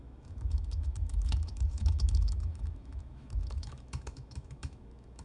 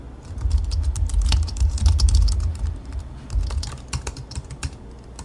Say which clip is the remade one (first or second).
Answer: first